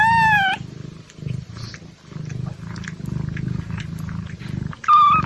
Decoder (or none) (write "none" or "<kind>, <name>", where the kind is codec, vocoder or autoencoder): none